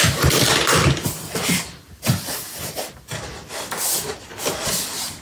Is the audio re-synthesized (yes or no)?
no